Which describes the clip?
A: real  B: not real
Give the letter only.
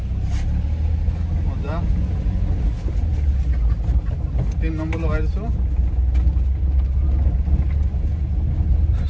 A